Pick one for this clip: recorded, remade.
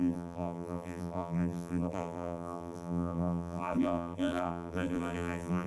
remade